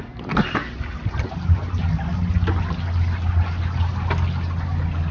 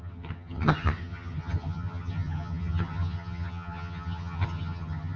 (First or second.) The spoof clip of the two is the second